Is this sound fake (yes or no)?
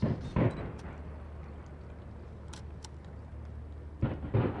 no